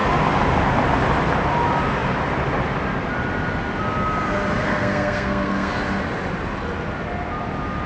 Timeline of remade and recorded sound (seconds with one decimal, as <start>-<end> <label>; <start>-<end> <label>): 0.0-4.6 recorded; 4.6-5.7 remade; 5.7-7.9 recorded

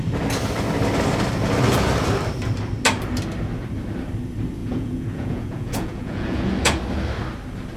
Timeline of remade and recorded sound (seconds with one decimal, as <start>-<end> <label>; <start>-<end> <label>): 0.0-4.6 recorded; 4.6-6.8 remade; 6.8-7.8 recorded